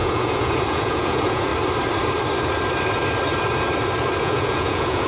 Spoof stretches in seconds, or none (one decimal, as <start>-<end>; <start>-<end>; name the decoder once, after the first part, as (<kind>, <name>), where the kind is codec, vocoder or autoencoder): 0.0-1.5 (vocoder, Vocos); 4.2-5.1